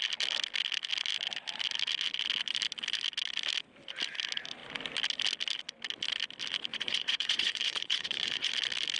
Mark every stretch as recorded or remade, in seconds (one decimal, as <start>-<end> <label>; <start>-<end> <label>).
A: 0.0-6.7 recorded; 6.7-8.5 remade; 8.5-9.0 recorded